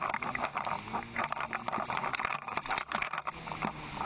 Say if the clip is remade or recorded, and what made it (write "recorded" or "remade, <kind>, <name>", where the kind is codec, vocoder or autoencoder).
recorded